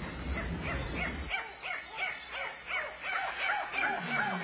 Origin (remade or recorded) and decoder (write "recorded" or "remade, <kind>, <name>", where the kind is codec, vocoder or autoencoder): recorded